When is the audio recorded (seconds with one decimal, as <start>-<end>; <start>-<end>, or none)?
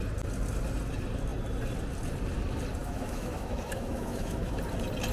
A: 0.0-2.8; 4.6-5.1